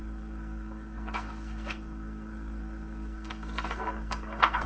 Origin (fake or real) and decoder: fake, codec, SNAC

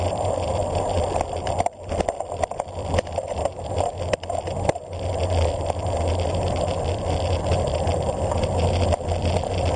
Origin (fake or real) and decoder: real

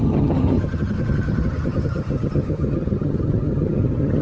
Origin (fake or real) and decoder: fake, vocoder, HiFi-GAN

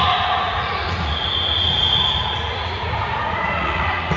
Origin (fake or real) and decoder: fake, vocoder, Vocos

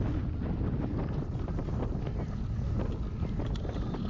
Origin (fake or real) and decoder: real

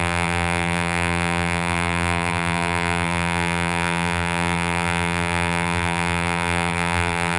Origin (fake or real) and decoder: fake, vocoder, BigVGAN v2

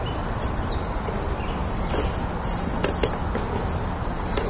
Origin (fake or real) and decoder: real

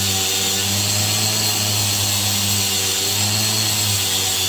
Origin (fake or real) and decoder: real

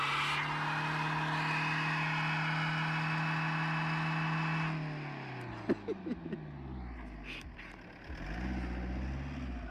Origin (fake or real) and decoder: real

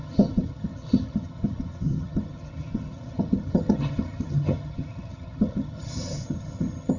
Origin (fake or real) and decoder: fake, vocoder, HiFi-GAN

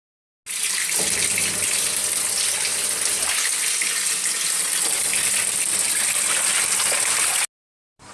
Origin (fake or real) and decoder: real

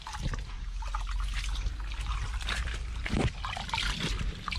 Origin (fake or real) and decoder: real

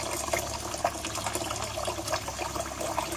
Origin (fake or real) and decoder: real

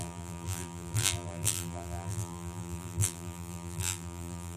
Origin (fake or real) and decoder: fake, vocoder, BigVGAN v2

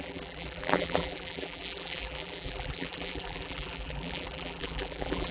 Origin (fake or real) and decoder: fake, vocoder, BigVGAN v2